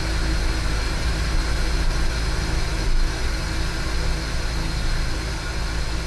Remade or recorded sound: recorded